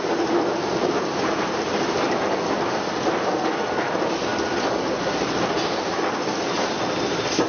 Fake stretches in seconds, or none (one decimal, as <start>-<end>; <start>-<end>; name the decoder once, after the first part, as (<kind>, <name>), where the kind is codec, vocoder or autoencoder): none